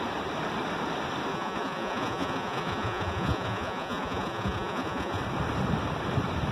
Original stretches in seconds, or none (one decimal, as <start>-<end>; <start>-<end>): 0.0-1.3; 5.2-6.5